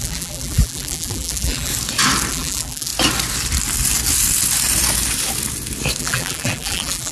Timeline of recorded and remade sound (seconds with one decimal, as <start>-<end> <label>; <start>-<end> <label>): 0.0-1.7 remade; 1.7-2.3 recorded; 2.3-2.9 remade; 2.9-6.0 recorded; 6.0-7.1 remade